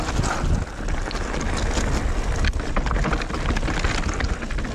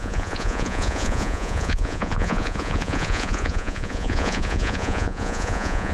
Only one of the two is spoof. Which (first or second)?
second